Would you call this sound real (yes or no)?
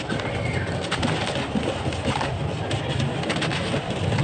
yes